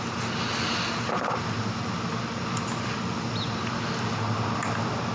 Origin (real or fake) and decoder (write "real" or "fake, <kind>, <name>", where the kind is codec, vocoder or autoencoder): real